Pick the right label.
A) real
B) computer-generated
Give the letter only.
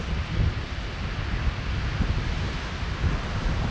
A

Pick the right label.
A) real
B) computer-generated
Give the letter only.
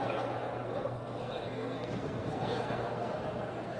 B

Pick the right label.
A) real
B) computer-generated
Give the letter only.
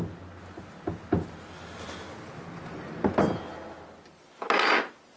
A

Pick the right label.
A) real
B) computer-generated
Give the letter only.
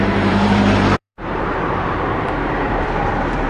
B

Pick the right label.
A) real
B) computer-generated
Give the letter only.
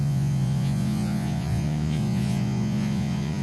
B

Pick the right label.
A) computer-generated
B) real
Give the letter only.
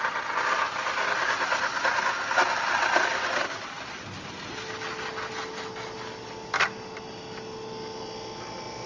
B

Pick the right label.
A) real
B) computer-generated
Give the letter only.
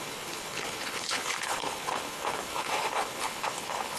B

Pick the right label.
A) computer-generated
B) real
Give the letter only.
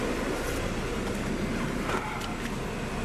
B